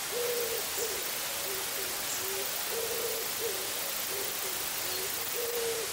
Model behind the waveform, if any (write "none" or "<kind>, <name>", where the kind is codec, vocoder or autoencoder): none